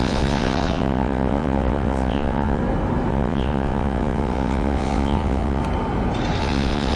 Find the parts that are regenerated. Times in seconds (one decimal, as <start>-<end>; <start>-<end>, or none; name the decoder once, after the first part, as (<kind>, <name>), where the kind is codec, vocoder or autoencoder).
0.0-2.6 (vocoder, WaveNeXt); 3.1-5.6; 6.4-7.0